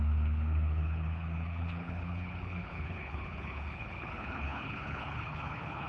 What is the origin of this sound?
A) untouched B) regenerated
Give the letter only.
B